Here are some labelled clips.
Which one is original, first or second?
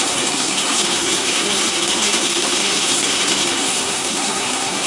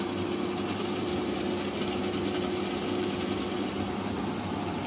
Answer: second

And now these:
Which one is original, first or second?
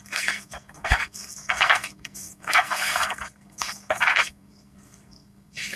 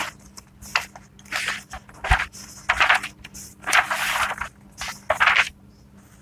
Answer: second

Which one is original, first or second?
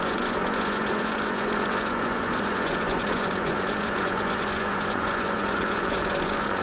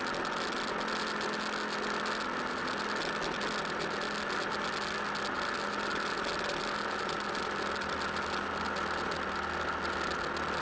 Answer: second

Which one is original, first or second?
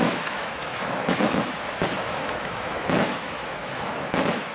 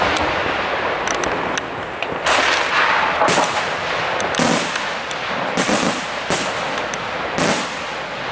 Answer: second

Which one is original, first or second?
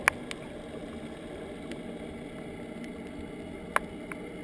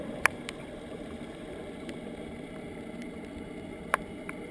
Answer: first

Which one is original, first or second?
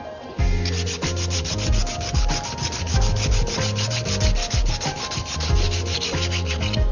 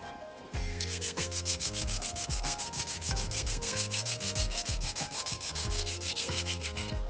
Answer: first